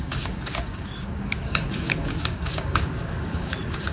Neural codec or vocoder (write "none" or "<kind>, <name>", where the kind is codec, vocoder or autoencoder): codec, DAC